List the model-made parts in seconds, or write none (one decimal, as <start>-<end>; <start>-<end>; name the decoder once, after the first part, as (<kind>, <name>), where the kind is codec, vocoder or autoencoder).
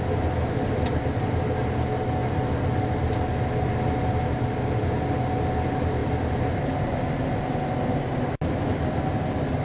none